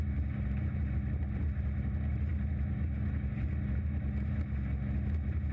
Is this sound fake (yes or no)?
no